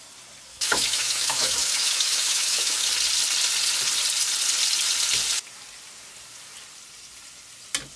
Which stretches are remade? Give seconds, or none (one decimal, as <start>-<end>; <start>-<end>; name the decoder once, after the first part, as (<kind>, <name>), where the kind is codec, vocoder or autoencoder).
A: 0.5-2.9 (autoencoder, DAC-VAE)